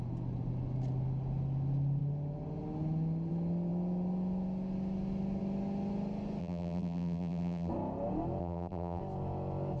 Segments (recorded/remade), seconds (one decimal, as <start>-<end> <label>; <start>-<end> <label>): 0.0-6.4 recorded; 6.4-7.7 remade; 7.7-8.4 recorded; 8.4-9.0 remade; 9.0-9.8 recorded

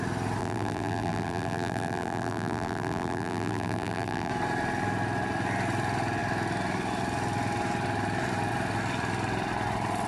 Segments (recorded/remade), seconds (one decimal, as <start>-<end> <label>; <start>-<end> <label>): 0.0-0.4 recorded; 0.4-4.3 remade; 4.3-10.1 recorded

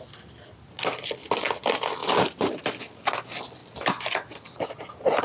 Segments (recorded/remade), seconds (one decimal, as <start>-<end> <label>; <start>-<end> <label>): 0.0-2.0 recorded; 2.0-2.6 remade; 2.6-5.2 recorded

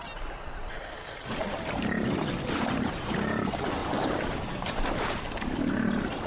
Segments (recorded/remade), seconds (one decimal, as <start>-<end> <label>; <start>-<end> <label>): 0.0-1.4 recorded; 1.4-3.1 remade; 3.1-3.8 recorded; 3.8-5.2 remade; 5.2-6.3 recorded

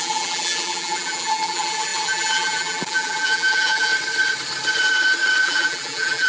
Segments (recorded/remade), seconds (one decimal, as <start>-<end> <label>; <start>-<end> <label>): 0.0-3.9 remade; 3.9-5.4 recorded; 5.4-6.3 remade

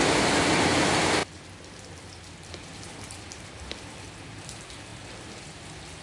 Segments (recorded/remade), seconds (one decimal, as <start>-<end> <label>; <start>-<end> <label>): 0.0-4.9 recorded; 4.9-5.4 remade; 5.4-6.0 recorded

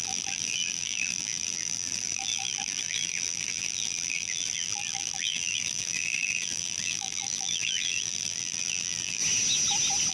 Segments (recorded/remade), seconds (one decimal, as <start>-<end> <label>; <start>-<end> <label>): 0.0-9.2 remade; 9.2-10.1 recorded

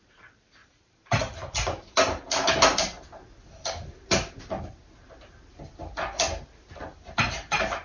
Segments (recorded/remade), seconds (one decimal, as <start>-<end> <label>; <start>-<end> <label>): 0.0-0.6 recorded; 0.6-1.2 remade; 1.2-7.8 recorded